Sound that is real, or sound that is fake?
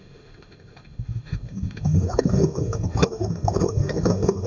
fake